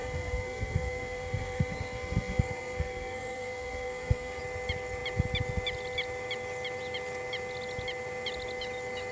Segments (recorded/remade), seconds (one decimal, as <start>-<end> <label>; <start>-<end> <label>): 0.0-4.4 remade; 4.4-9.1 recorded